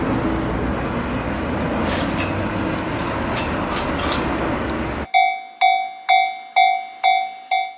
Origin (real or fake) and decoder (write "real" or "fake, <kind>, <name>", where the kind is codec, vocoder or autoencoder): real